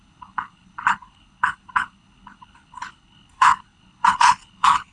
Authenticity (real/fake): fake